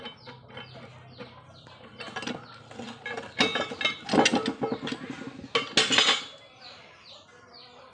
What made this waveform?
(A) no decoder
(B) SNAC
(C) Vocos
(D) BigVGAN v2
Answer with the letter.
A